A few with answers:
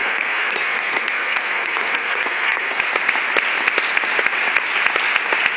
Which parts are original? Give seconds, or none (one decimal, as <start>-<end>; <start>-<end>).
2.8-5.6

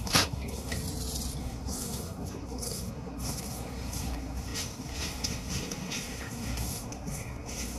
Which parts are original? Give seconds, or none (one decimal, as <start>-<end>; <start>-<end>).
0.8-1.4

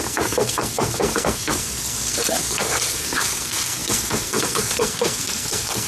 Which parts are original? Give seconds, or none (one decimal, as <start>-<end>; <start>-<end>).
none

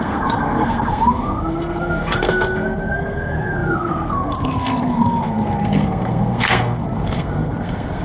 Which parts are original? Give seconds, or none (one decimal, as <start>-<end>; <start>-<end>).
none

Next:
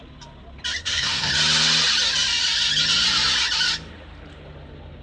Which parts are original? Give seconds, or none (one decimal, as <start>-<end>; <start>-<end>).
0.0-0.8; 1.3-5.0

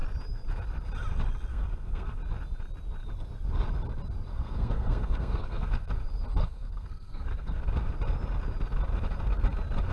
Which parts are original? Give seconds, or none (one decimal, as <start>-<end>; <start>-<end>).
0.0-1.5; 2.2-4.3; 5.9-6.4; 7.6-9.9

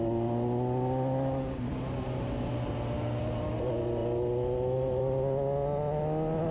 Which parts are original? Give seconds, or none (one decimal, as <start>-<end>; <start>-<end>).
0.0-6.5

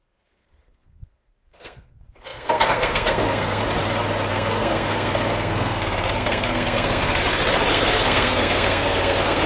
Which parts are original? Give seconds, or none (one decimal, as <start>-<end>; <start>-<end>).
3.6-4.3; 7.2-7.7